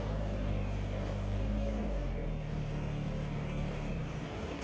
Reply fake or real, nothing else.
fake